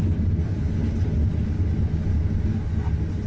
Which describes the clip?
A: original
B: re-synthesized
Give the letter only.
A